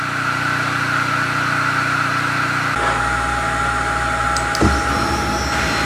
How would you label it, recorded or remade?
recorded